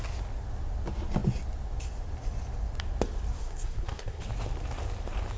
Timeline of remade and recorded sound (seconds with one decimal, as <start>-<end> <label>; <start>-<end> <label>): 0.0-3.3 recorded; 3.3-4.2 remade; 4.2-5.4 recorded

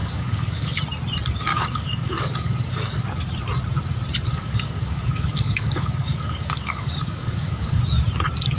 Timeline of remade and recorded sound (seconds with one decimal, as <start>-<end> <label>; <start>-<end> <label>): 0.0-0.8 remade; 0.8-1.5 recorded; 1.5-3.0 remade; 3.0-4.3 recorded; 4.3-7.8 remade; 7.8-8.6 recorded